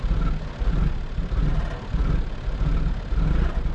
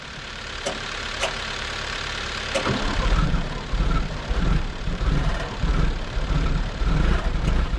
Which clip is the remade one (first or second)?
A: second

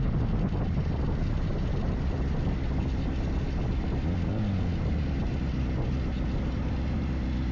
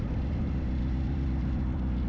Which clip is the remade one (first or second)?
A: second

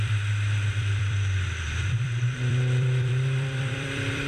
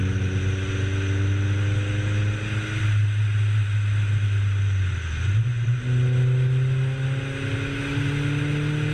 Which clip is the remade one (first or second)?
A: first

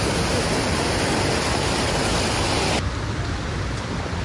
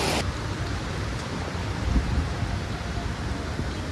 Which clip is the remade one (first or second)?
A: second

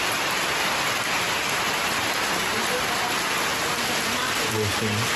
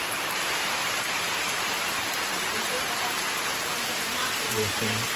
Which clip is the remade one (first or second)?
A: second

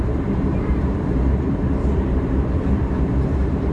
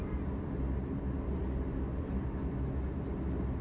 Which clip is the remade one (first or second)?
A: first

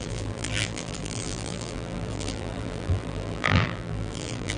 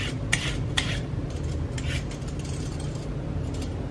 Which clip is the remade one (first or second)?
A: first